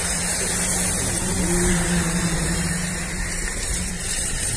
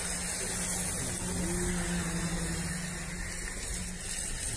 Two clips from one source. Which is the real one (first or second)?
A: second